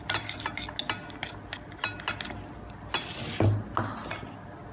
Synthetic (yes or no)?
no